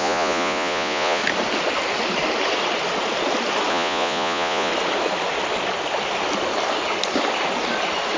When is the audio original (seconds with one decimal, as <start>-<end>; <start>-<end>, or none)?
1.2-3.7; 4.7-8.2

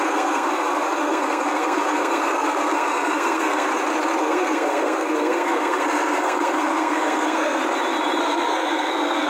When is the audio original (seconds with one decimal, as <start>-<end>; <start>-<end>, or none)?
3.7-4.2; 7.6-8.2

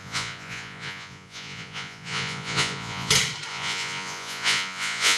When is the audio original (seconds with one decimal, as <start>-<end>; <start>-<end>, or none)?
3.1-3.5

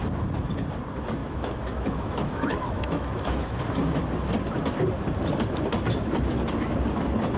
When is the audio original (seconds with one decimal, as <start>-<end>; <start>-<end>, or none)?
0.0-1.2; 3.6-7.4

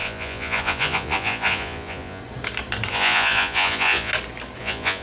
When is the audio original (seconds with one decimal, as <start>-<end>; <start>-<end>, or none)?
2.2-2.9; 4.1-4.6

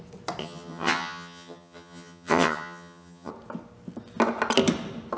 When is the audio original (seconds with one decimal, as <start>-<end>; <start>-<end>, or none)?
0.0-0.4; 3.3-5.2